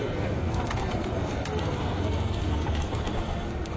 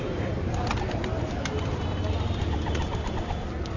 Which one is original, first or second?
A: second